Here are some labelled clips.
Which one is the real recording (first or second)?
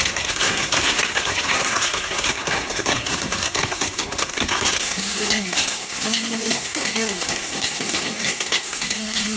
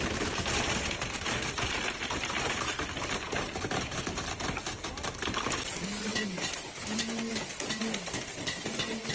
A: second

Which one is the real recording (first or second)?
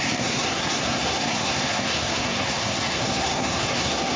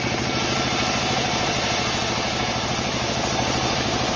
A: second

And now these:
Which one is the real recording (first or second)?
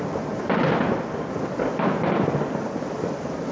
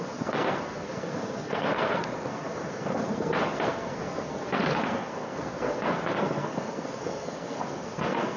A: first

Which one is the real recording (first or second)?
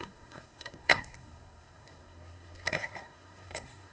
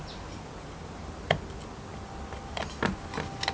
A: second